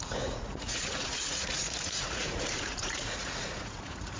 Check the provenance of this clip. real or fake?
fake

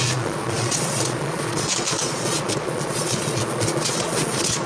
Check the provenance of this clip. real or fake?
fake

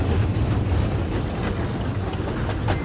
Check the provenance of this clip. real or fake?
real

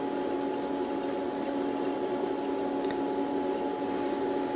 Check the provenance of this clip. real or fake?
real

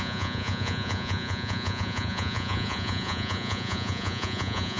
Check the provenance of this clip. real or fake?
fake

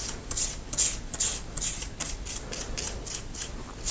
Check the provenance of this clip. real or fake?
real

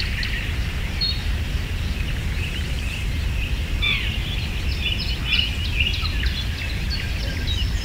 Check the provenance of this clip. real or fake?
real